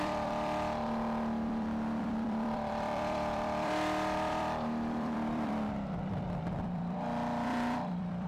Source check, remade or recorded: remade